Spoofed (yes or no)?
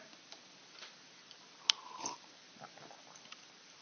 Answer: yes